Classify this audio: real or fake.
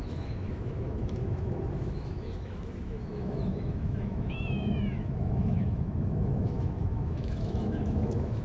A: fake